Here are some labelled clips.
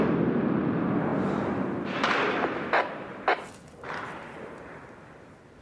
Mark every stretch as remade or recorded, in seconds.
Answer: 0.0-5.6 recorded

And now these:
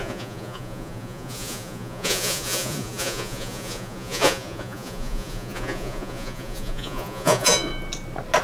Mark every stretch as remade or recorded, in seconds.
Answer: 0.0-7.7 remade; 7.7-8.4 recorded

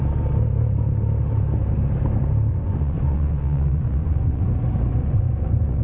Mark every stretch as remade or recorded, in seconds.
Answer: 0.0-2.5 recorded; 2.5-4.4 remade; 4.4-5.0 recorded; 5.0-5.8 remade

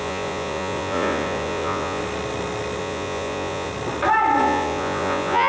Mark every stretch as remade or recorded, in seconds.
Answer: 0.0-2.0 remade; 2.0-2.8 recorded; 2.8-3.7 remade; 3.7-4.4 recorded; 4.4-5.5 remade

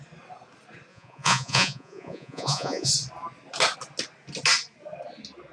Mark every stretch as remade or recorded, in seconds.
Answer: 0.0-0.9 recorded; 0.9-2.9 remade; 2.9-5.5 recorded

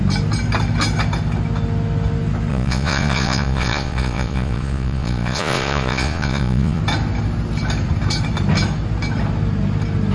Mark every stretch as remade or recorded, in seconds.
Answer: 0.0-2.5 recorded; 2.5-6.8 remade; 6.8-10.1 recorded

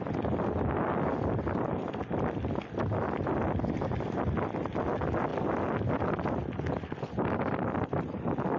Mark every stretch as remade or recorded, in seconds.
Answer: 0.0-8.6 recorded

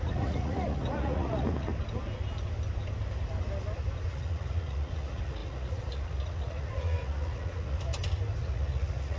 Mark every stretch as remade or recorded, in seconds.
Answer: 0.0-1.7 remade; 1.7-4.1 recorded; 4.1-7.9 remade; 7.9-8.4 recorded; 8.4-9.2 remade